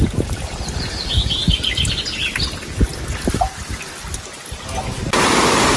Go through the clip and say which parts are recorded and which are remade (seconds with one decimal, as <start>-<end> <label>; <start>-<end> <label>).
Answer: 0.0-5.8 recorded